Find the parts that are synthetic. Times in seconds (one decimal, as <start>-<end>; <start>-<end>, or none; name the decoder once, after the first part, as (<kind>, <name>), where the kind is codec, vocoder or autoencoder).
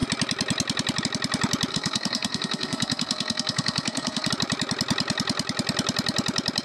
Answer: 1.7-4.3 (codec, SNAC)